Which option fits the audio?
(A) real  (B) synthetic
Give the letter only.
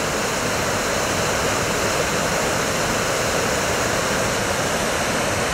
A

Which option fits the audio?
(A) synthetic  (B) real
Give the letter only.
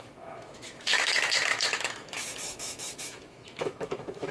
A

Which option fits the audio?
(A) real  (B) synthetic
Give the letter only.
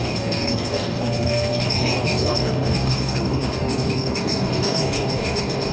B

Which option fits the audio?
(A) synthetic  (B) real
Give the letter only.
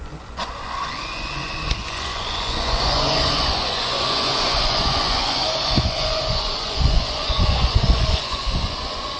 A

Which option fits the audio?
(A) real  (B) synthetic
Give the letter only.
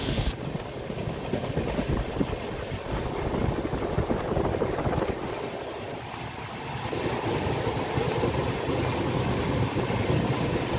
A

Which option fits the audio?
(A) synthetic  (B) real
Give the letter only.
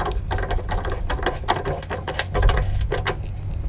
B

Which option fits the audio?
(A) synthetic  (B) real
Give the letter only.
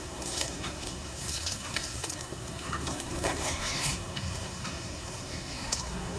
A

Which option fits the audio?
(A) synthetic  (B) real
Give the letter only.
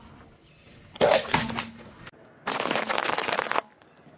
B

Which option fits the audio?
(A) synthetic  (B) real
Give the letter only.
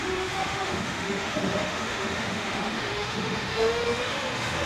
A